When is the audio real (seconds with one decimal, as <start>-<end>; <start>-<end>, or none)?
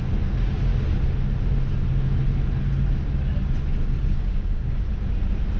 0.0-4.1; 4.9-5.6